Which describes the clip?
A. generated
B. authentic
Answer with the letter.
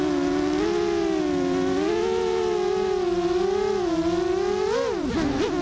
B